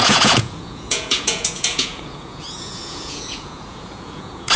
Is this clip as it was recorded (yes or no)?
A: no